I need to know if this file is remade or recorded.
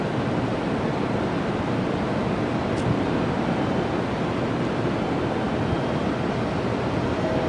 recorded